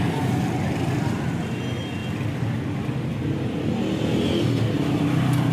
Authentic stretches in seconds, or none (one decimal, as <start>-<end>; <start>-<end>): 0.0-5.5